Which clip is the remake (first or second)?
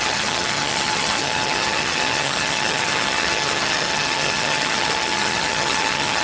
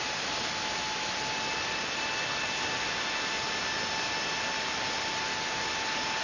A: first